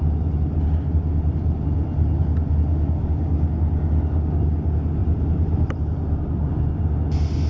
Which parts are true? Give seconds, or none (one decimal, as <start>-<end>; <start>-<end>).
0.0-5.0; 5.8-7.5